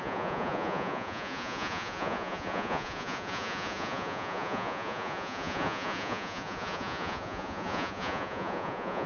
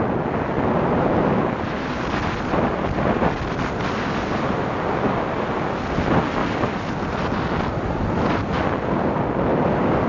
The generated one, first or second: first